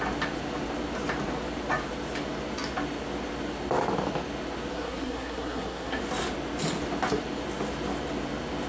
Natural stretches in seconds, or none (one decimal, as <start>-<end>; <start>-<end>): 0.0-4.7; 6.0-8.7